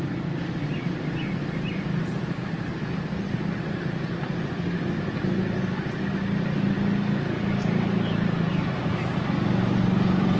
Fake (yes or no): no